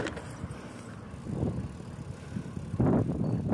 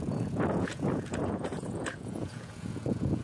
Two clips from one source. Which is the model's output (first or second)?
second